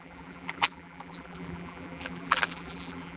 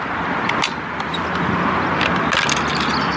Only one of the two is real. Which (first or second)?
second